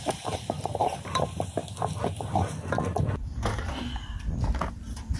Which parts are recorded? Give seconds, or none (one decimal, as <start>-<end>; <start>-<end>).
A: 1.6-4.7